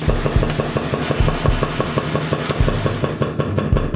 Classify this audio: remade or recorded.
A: recorded